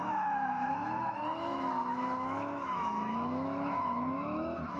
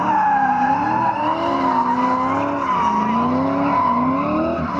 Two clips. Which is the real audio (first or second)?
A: second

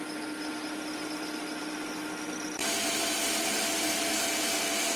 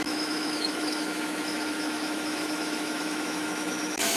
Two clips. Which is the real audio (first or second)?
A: first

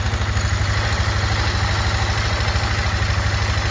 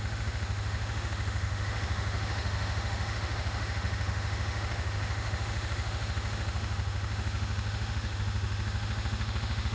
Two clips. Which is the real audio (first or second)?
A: first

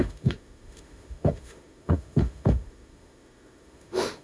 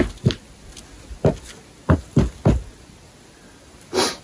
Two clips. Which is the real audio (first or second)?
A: second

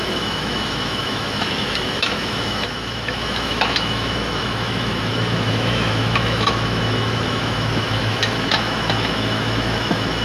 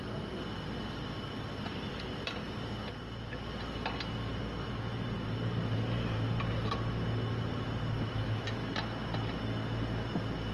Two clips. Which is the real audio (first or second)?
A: second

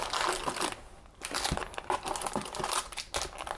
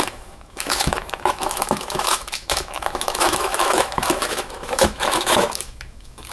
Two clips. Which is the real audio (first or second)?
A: first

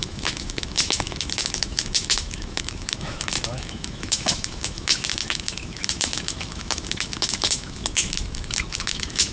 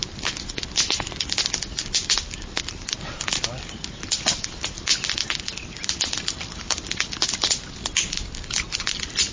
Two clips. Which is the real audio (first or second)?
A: second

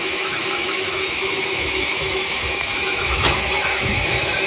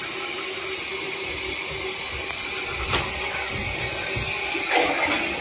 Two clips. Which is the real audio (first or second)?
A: second